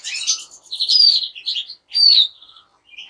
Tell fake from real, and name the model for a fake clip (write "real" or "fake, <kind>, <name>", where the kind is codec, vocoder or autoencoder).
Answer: real